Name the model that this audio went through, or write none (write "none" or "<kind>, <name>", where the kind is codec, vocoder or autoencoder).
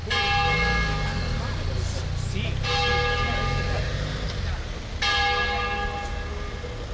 none